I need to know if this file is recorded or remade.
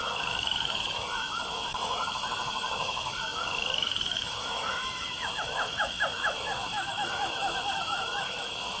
remade